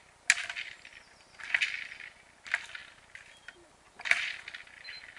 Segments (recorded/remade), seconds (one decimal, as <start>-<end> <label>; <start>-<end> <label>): 0.0-5.2 recorded